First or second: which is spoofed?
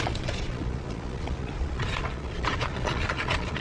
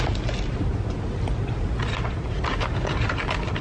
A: first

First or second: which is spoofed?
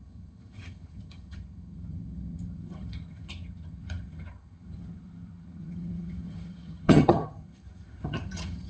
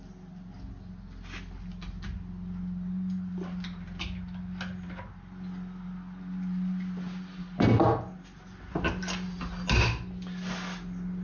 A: first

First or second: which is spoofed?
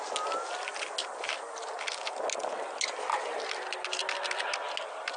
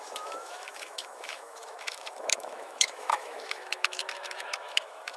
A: second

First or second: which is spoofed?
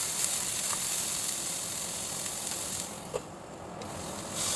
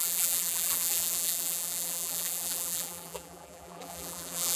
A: second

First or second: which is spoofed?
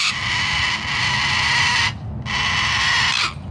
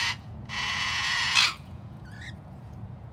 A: second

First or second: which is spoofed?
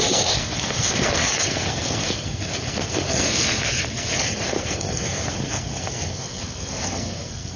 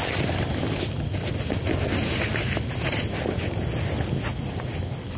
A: first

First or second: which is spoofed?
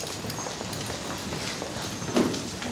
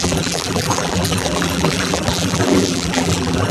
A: second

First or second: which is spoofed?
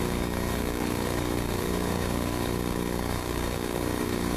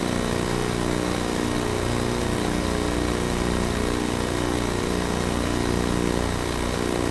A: first